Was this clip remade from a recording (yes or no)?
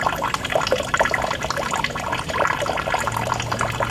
no